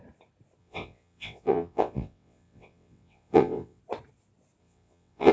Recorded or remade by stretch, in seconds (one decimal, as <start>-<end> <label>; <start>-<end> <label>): 0.0-0.6 recorded; 0.6-3.8 remade; 3.8-4.6 recorded; 4.6-5.3 remade